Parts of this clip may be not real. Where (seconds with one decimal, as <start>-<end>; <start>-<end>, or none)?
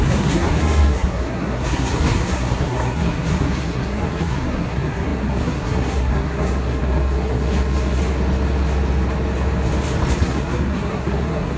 0.0-8.0; 10.1-11.6